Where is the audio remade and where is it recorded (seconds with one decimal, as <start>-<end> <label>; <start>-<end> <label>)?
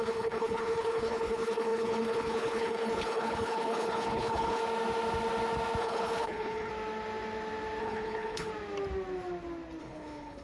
0.0-4.6 remade; 4.6-5.8 recorded; 5.8-6.7 remade; 6.7-7.8 recorded; 7.8-8.5 remade; 8.5-9.8 recorded; 9.8-10.4 remade